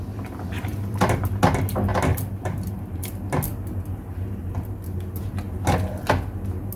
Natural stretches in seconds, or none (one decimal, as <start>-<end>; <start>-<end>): 0.0-0.7; 1.2-2.1; 2.8-6.8